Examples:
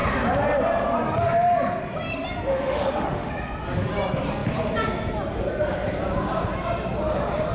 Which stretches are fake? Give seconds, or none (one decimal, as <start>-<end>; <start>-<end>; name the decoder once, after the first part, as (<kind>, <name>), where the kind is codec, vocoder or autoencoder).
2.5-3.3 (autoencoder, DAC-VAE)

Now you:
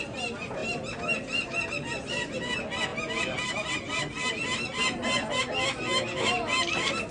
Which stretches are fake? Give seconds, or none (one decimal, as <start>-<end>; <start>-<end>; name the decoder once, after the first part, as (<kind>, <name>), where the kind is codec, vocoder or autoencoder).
none

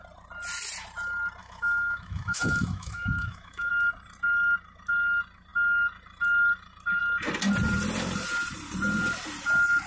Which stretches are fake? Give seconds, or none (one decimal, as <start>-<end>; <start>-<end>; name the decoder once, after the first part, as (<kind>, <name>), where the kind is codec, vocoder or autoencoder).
1.4-3.7 (autoencoder, DAC-VAE)

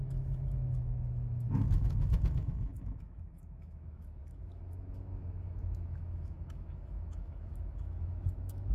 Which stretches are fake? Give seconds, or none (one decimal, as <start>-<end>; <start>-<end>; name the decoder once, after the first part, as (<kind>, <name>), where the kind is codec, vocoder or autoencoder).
0.0-8.7 (autoencoder, DAC-VAE)

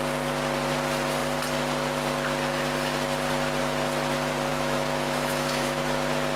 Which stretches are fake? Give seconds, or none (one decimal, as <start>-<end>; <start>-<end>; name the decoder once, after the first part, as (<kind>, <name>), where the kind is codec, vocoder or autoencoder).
4.5-5.8 (autoencoder, DAC-VAE)